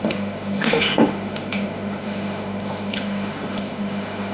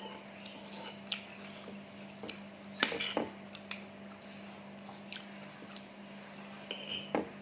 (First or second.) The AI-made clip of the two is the first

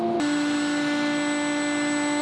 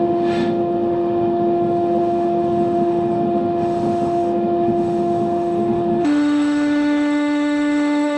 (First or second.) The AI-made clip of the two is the second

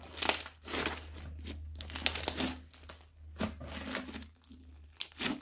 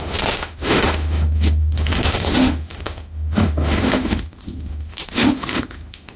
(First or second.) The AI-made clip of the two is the second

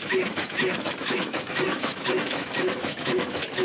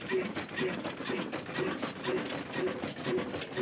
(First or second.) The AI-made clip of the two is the first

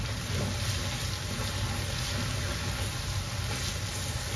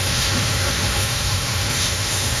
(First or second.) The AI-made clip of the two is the second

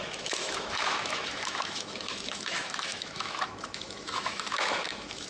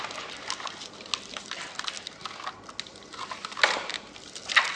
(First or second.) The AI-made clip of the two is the first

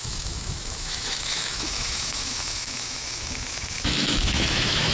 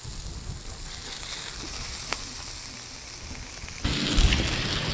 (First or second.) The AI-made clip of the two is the first